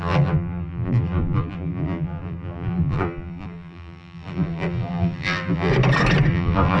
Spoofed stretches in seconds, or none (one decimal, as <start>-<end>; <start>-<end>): 0.0-5.7; 6.3-6.8